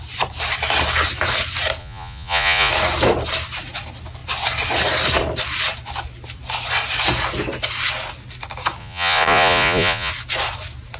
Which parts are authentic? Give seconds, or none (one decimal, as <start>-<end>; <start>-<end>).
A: 0.0-1.8; 2.7-8.8; 10.1-11.0